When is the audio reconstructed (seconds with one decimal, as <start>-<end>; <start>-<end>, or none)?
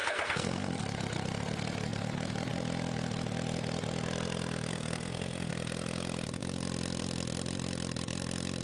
0.0-0.7; 4.7-5.5